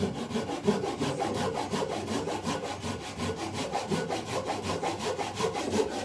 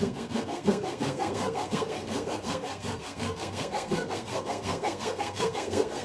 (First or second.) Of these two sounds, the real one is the first